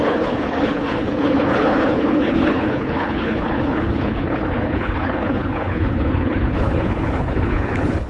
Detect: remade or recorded remade